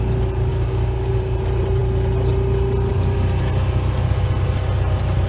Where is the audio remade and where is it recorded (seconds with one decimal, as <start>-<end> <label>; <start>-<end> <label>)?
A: 0.0-0.5 recorded; 0.5-1.2 remade; 1.2-5.3 recorded